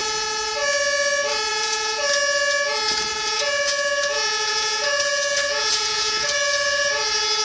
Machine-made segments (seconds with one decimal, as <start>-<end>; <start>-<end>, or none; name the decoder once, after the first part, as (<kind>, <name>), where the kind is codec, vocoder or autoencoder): 1.5-2.0 (vocoder, Vocos); 3.1-6.9